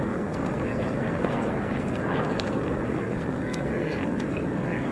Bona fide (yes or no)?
no